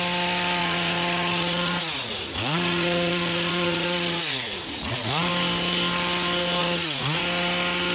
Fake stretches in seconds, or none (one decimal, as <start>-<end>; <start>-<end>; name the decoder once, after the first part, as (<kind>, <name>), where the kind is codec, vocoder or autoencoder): 0.6-5.3 (vocoder, Vocos); 6.6-7.2